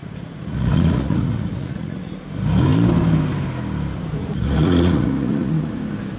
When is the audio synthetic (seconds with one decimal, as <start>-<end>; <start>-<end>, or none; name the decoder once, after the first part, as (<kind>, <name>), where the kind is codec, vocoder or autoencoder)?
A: 0.0-2.2 (vocoder, Vocos); 4.2-5.7